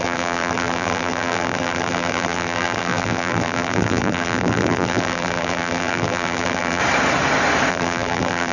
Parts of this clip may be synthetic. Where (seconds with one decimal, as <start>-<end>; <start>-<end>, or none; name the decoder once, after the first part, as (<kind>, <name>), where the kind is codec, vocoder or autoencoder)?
0.0-6.8 (vocoder, BigVGAN v2); 7.7-8.5